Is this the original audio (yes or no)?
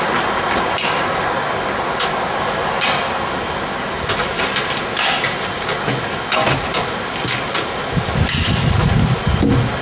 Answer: yes